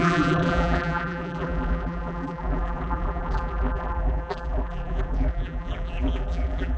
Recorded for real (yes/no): no